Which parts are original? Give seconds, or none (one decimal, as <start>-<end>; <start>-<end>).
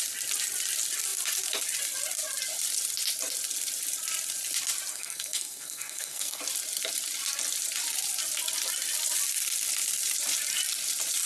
0.0-4.9; 6.4-11.3